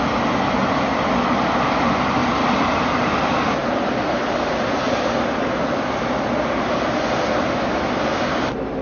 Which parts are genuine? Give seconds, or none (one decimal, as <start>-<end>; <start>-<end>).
0.0-8.8

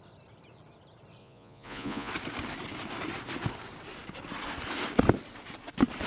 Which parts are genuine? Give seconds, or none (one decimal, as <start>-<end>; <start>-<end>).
0.0-1.2; 2.1-6.1

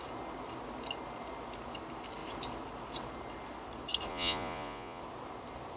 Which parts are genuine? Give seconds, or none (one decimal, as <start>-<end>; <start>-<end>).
0.0-4.1; 5.0-5.8